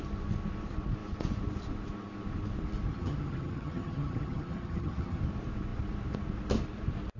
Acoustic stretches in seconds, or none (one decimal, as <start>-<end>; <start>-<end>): 0.0-2.9; 5.2-7.2